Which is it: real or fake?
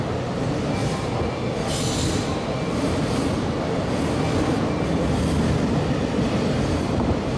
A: real